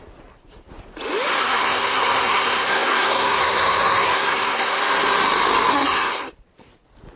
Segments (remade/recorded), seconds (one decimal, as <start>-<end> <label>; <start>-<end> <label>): 0.0-1.4 recorded; 1.4-4.8 remade; 4.8-5.7 recorded; 5.7-6.3 remade; 6.3-7.2 recorded